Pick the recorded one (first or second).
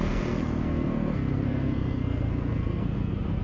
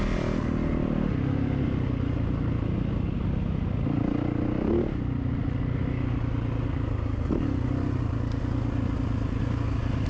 second